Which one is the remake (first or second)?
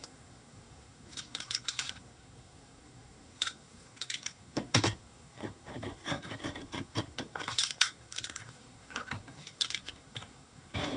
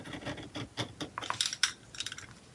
first